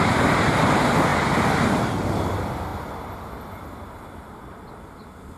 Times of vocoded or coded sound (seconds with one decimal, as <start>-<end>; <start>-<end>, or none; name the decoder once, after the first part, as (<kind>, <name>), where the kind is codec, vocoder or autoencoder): none